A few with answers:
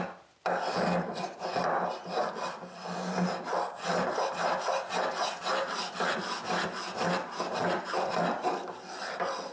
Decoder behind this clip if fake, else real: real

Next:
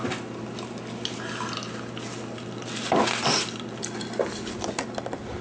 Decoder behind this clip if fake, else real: real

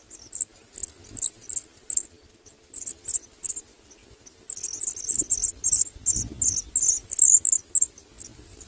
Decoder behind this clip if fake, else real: real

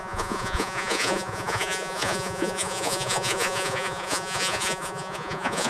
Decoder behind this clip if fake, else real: fake, vocoder, Vocos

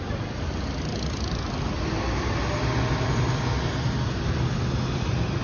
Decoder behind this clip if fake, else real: real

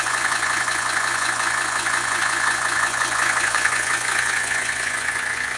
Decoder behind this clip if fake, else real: fake, vocoder, Vocos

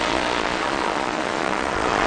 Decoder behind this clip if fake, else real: fake, vocoder, Vocos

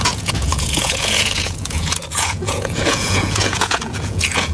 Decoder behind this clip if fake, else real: fake, vocoder, Vocos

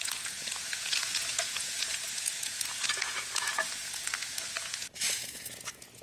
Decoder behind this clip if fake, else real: fake, vocoder, Vocos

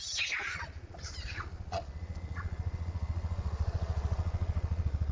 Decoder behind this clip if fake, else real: fake, vocoder, Vocos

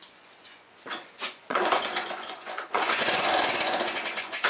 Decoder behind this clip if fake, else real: fake, vocoder, Vocos